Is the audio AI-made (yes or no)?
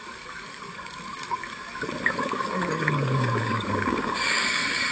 yes